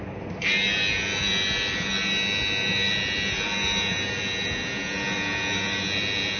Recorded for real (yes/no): yes